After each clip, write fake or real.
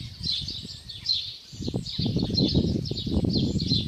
real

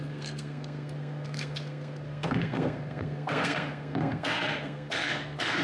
fake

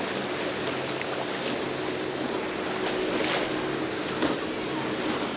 real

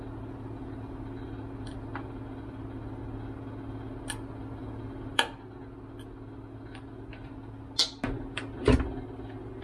real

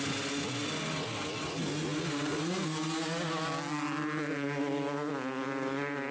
real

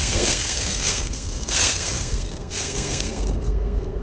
fake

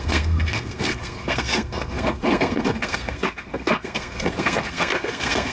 fake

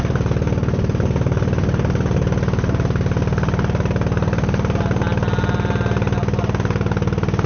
real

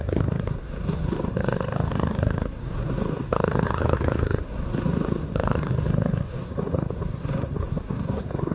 fake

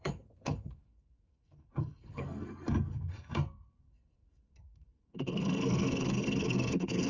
fake